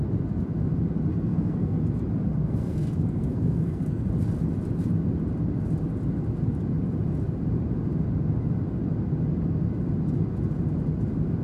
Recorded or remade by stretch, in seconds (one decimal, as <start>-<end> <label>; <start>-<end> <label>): 0.0-1.1 recorded; 1.1-1.8 remade; 1.8-2.3 recorded; 2.3-4.1 remade; 4.1-11.4 recorded